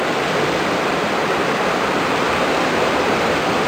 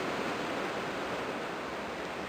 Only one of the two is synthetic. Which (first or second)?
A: first